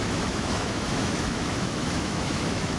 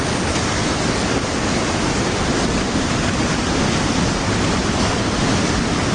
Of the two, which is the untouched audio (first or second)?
second